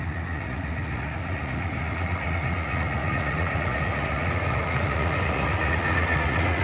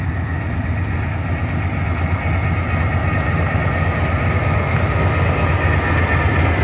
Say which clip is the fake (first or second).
first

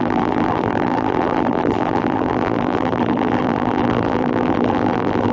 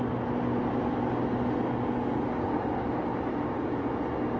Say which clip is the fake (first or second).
first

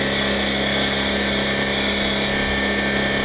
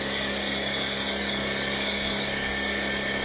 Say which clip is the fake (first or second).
second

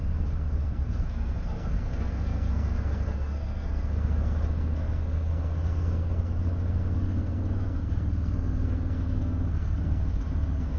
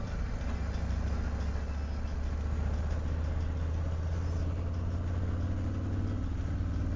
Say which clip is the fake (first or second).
first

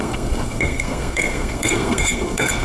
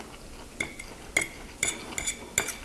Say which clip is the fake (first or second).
first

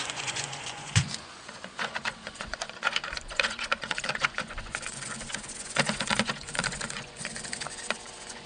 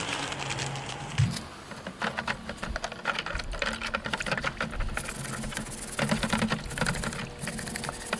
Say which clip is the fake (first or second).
first